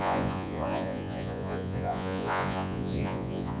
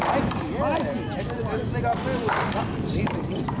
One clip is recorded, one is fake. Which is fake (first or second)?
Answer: first